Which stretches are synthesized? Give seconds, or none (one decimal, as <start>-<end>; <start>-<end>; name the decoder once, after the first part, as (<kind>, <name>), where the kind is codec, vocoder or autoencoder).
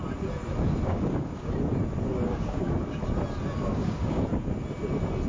0.9-1.5 (codec, DAC); 2.1-2.7; 3.7-4.3